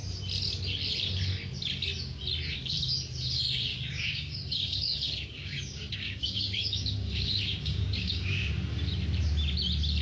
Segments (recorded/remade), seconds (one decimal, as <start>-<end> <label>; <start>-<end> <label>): 0.0-3.7 recorded; 3.7-8.5 remade; 8.5-10.0 recorded